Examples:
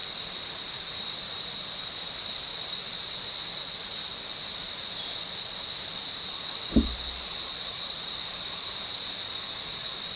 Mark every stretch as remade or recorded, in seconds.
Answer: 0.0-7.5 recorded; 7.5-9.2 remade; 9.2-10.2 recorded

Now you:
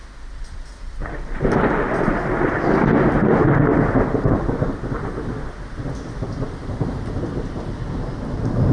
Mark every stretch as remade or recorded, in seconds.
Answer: 0.0-1.0 remade; 1.0-3.7 recorded; 3.7-8.7 remade